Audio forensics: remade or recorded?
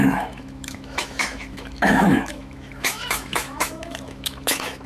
remade